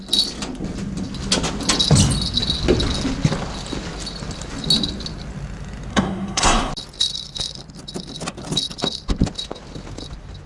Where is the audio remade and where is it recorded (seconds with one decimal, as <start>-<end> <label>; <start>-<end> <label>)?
0.0-5.9 recorded; 5.9-6.7 remade; 6.7-10.5 recorded